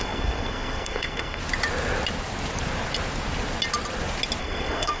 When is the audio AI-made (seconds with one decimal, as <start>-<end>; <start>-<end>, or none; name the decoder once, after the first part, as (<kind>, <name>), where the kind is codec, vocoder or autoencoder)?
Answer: 0.0-1.4 (codec, SNAC); 4.4-5.0